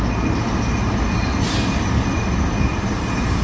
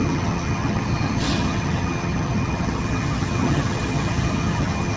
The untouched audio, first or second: first